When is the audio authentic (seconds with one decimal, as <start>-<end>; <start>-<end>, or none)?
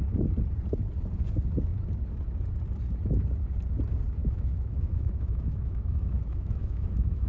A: 0.0-4.2